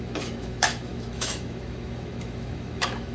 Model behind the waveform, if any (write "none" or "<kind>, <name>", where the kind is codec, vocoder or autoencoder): autoencoder, DAC-VAE